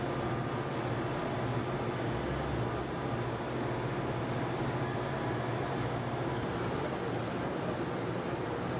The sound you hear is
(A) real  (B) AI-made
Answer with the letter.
A